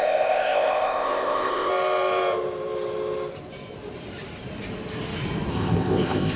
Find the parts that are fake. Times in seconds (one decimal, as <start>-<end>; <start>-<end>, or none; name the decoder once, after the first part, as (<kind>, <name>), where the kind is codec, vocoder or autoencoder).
0.0-1.7 (codec, ZipCodec); 5.5-6.4